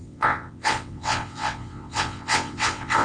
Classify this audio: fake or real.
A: fake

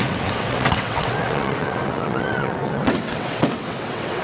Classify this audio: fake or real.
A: fake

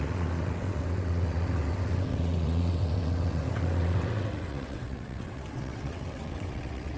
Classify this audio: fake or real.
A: fake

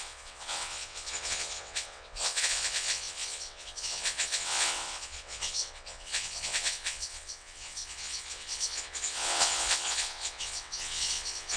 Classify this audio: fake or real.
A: fake